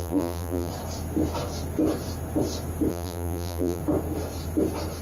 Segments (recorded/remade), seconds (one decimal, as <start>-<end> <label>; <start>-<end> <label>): 0.0-0.7 remade; 0.7-2.9 recorded; 2.9-3.8 remade; 3.8-5.0 recorded